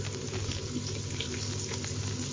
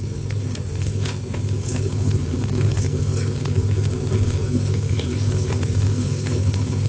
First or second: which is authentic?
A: first